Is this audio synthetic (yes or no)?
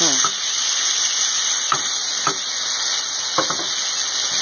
no